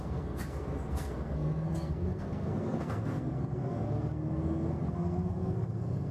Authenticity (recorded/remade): remade